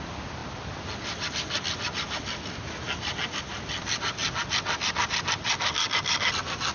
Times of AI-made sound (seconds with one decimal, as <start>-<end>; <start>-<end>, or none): none